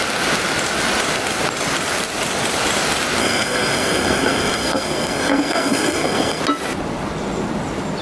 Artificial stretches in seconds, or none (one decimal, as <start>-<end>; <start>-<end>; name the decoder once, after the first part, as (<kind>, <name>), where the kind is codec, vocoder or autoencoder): 3.2-6.4 (codec, SNAC)